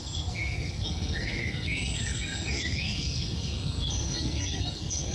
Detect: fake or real fake